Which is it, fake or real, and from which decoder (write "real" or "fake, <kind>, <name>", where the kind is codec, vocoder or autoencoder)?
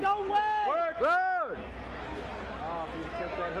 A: real